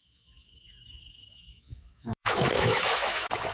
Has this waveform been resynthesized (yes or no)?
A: yes